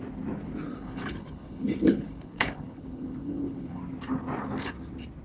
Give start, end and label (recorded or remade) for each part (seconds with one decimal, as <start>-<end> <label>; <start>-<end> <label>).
0.0-0.7 recorded; 0.7-3.8 remade; 3.8-5.2 recorded